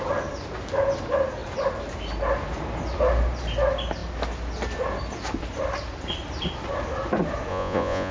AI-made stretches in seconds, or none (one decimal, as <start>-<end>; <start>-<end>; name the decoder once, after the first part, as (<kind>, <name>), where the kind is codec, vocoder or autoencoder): 7.5-8.1 (vocoder, Vocos)